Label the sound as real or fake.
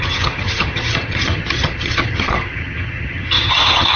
fake